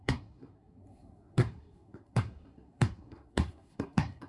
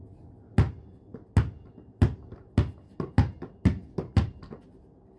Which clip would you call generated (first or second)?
first